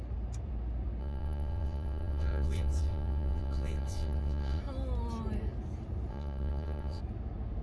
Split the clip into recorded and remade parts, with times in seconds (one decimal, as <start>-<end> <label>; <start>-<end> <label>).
0.0-1.0 recorded; 1.0-4.6 remade; 4.6-6.1 recorded; 6.1-7.0 remade; 7.0-7.6 recorded

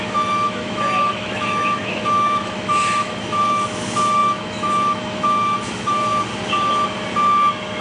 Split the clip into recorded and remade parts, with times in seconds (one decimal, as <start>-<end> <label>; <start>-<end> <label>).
0.0-6.1 remade; 6.1-7.8 recorded

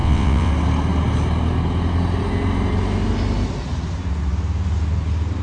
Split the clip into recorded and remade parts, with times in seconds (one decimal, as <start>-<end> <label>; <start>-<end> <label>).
0.0-0.5 remade; 0.5-5.4 recorded

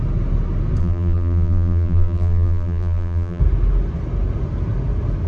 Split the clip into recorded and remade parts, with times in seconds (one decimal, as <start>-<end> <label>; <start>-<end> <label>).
0.0-0.8 recorded; 0.8-3.4 remade; 3.4-5.3 recorded

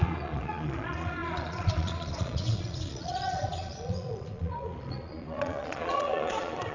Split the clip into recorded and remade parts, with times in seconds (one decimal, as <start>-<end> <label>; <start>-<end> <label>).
0.0-6.7 remade

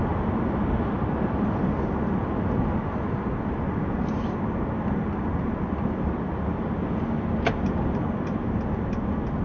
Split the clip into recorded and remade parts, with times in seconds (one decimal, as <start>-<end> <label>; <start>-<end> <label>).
0.0-9.4 recorded